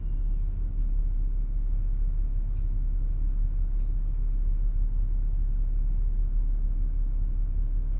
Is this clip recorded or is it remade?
recorded